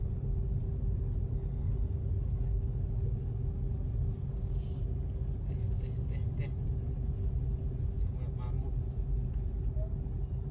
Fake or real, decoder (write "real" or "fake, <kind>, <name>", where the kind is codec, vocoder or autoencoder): real